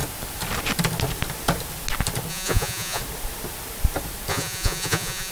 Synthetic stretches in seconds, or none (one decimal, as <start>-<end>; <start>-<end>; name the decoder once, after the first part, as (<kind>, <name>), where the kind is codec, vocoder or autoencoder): 2.3-3.0 (vocoder, Vocos); 4.3-5.3